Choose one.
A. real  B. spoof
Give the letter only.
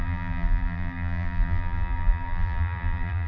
B